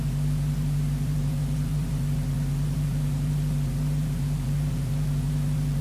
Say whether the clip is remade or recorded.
remade